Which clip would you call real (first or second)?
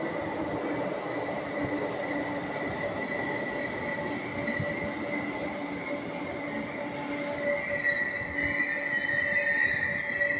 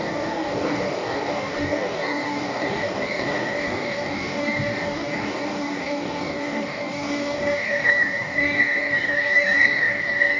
first